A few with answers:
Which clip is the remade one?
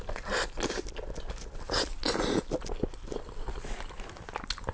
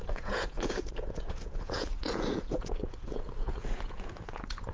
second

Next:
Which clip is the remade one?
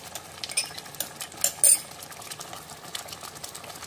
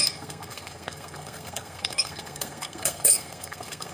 second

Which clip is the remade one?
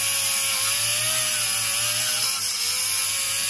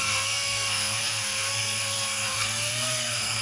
second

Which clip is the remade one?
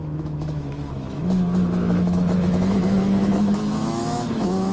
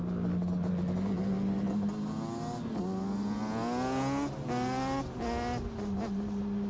first